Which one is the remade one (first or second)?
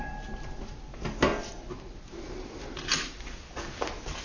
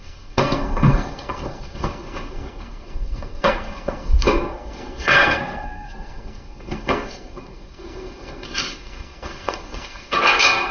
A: second